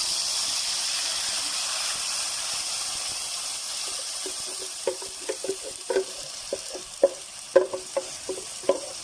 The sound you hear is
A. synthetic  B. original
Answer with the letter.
A